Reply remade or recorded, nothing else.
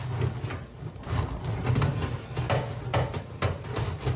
recorded